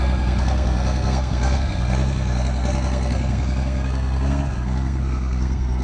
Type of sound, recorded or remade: remade